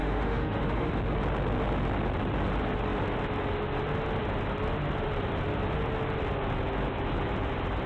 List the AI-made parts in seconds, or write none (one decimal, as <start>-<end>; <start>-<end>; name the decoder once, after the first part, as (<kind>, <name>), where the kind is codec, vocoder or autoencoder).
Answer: 0.0-0.9 (autoencoder, DAC-VAE)